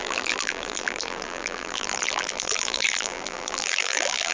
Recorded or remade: remade